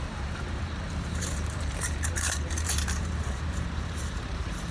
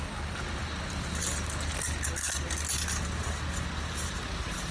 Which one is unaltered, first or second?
second